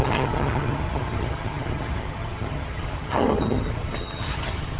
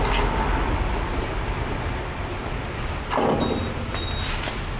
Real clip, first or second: second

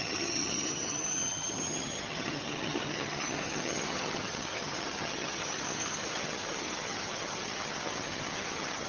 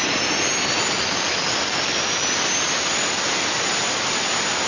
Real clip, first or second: second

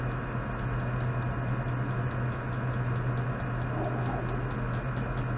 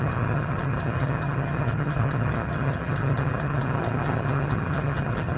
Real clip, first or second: first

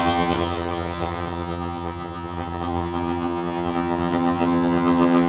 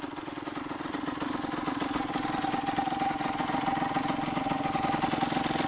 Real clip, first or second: second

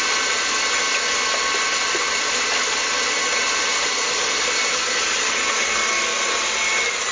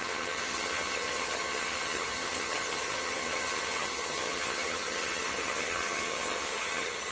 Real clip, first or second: first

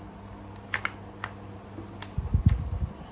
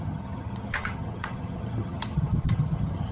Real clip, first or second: first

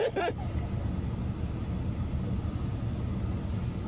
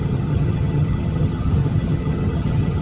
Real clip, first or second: first